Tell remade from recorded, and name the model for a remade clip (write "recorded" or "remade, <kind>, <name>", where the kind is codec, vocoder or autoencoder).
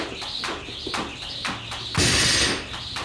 recorded